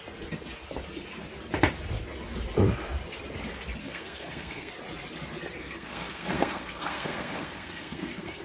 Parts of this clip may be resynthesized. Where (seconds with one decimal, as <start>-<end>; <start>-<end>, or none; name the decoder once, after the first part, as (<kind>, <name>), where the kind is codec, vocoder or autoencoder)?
3.8-4.7 (codec, SNAC); 5.6-8.4